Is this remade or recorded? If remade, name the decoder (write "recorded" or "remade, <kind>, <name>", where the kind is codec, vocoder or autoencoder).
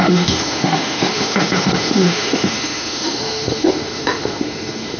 remade, autoencoder, DAC-VAE